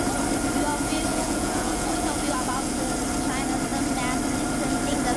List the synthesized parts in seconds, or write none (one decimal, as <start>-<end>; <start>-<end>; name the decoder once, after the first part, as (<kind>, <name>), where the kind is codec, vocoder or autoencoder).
1.1-2.8 (vocoder, Vocos)